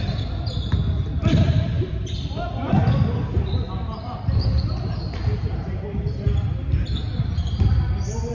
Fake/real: fake